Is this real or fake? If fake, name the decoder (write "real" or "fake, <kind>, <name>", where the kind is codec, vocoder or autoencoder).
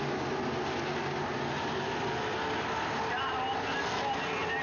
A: real